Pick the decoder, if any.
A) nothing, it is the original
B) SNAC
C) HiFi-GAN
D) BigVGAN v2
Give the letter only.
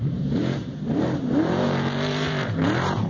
D